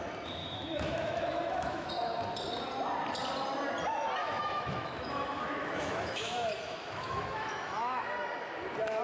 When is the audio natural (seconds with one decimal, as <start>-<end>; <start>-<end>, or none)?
0.0-0.4; 1.9-4.2; 8.0-9.0